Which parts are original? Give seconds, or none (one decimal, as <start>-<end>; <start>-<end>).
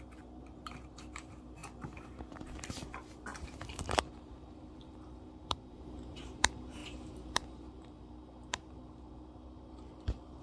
none